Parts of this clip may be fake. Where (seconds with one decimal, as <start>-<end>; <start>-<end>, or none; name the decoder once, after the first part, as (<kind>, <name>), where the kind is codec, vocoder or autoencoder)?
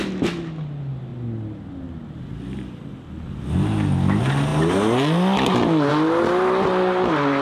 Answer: none